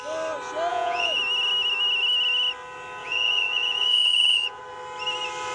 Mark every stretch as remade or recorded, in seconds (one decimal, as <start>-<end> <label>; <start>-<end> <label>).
0.0-0.7 recorded; 0.7-1.2 remade; 1.2-3.0 recorded; 3.0-4.6 remade; 4.6-5.5 recorded